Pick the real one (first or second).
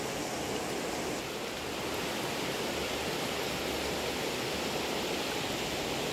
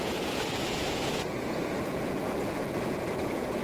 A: first